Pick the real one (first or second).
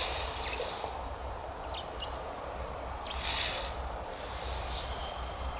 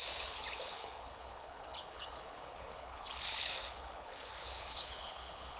first